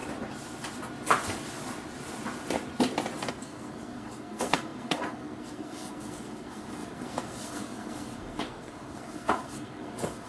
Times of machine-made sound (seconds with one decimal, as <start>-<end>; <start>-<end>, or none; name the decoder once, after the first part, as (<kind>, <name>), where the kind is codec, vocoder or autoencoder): 3.2-10.3 (codec, SNAC)